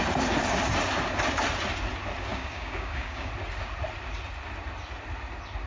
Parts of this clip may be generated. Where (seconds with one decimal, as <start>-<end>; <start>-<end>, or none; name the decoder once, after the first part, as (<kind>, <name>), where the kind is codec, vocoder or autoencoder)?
2.3-3.3 (codec, DAC)